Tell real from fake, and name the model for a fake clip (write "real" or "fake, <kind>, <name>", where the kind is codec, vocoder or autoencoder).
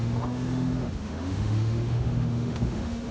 fake, autoencoder, DAC-VAE